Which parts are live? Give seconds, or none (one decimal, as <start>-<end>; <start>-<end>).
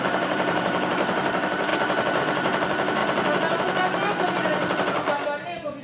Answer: 1.7-2.2; 3.0-5.8